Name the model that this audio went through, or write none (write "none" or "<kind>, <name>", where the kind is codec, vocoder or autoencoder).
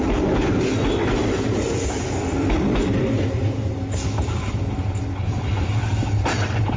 none